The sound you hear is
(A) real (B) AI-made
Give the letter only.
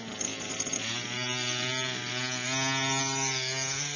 A